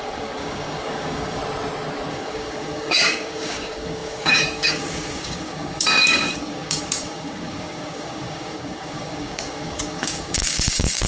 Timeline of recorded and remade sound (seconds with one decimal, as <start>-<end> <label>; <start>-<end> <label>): 0.0-1.4 remade; 1.4-2.1 recorded; 2.1-11.1 remade